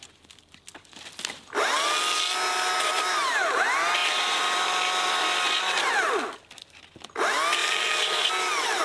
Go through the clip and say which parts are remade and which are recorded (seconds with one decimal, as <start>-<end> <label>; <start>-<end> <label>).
0.0-4.0 recorded; 4.0-5.9 remade; 5.9-7.6 recorded; 7.6-8.3 remade; 8.3-8.8 recorded